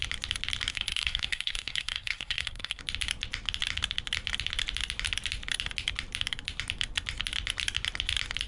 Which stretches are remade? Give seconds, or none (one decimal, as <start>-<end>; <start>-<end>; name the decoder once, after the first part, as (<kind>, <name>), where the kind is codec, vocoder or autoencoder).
0.7-2.8 (codec, SNAC)